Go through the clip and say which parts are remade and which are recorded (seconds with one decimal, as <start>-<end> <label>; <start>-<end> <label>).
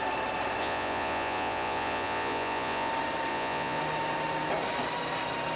0.0-0.6 recorded; 0.6-2.9 remade; 2.9-3.3 recorded; 3.3-3.8 remade; 3.8-5.6 recorded